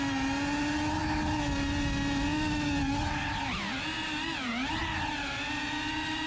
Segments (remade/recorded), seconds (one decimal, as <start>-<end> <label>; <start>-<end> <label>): 0.0-6.3 recorded